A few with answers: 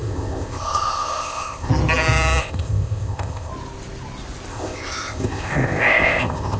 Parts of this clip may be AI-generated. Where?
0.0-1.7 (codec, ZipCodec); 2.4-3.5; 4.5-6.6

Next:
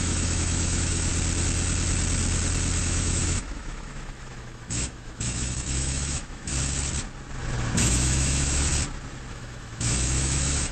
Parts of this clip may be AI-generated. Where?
0.0-1.1 (autoencoder, DAC-VAE); 2.8-6.5; 7.8-8.7; 9.3-10.7

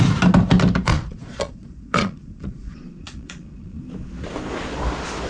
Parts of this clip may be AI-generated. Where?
0.9-3.8 (vocoder, Vocos)

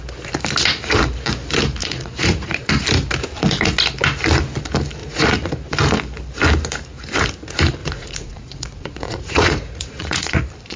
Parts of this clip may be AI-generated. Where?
1.8-2.7 (vocoder, Vocos); 5.0-5.5; 7.8-10.4

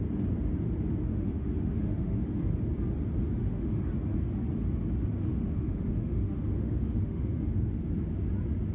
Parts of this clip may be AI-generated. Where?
1.1-2.5 (autoencoder, DAC-VAE); 3.4-3.9; 5.2-7.9

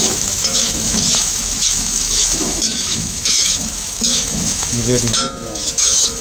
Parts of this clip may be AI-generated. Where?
0.0-6.2 (autoencoder, DAC-VAE)

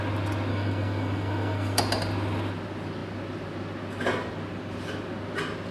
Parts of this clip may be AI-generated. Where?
0.5-1.8 (codec, SNAC)

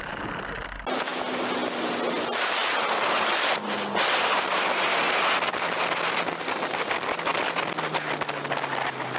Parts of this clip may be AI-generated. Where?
none